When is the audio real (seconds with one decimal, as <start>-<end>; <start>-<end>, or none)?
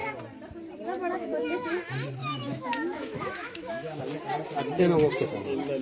0.0-1.0; 1.7-2.2; 4.0-5.8